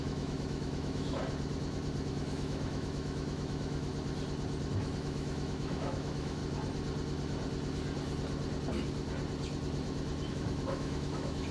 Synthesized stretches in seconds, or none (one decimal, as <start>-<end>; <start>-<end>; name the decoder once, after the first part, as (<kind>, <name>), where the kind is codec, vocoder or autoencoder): 0.0-1.2 (autoencoder, DAC-VAE); 2.1-3.9; 4.7-6.4; 10.3-11.5